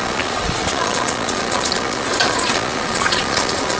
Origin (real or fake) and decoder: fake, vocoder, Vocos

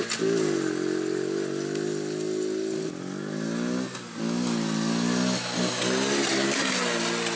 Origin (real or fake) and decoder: real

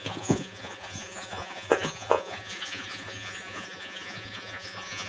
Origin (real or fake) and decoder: fake, vocoder, Vocos